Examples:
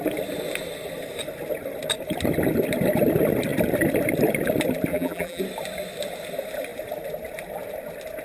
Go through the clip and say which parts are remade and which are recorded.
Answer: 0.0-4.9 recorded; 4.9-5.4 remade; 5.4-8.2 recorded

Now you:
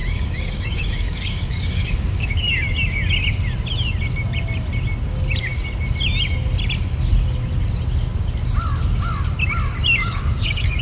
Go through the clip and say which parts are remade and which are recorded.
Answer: 0.0-2.5 remade; 2.5-10.0 recorded; 10.0-10.8 remade